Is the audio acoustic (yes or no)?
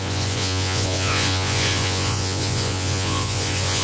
no